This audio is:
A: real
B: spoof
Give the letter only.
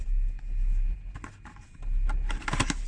A